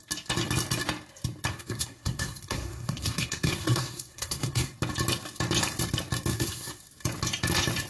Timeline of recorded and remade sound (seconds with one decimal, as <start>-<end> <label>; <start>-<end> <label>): 0.0-1.5 recorded; 1.5-4.7 remade; 4.7-6.3 recorded; 6.3-6.8 remade; 6.8-7.9 recorded